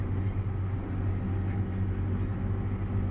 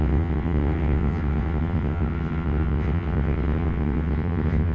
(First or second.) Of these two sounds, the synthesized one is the second